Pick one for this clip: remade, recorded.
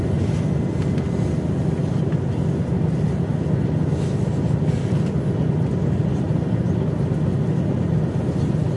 recorded